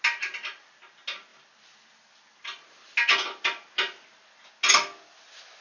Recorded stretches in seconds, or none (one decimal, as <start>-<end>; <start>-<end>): 0.0-5.6